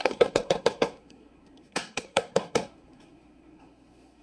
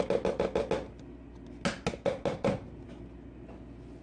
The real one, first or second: second